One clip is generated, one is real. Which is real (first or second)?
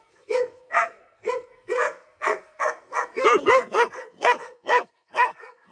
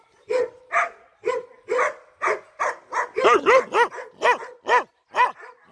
second